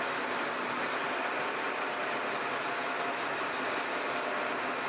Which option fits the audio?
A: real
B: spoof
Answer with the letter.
A